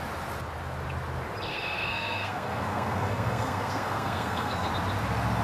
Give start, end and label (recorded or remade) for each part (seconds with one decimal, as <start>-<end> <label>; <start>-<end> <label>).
0.0-1.5 recorded; 1.5-4.7 remade; 4.7-5.4 recorded

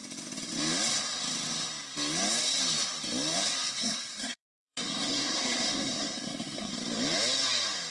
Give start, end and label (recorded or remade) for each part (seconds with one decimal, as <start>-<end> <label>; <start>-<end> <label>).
0.0-3.8 recorded; 3.8-6.7 remade; 6.7-7.9 recorded

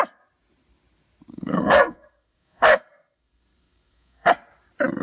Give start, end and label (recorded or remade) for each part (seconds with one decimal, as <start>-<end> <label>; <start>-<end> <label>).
0.0-1.3 recorded; 1.3-4.3 remade; 4.3-5.0 recorded

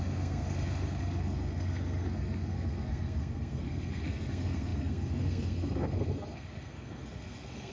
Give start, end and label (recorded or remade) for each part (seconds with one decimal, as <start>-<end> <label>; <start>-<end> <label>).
0.0-7.7 remade

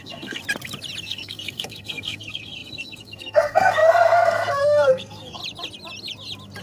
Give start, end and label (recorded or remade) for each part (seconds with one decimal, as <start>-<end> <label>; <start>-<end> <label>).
0.0-0.4 remade; 0.4-1.0 recorded; 1.0-5.4 remade; 5.4-6.6 recorded